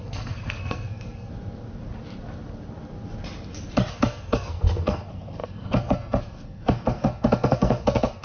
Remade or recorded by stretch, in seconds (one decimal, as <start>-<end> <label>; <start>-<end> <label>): 0.0-1.3 remade; 1.3-3.9 recorded; 3.9-8.2 remade